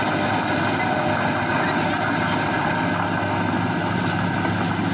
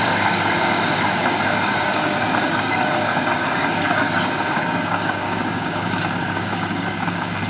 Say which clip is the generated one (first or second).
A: second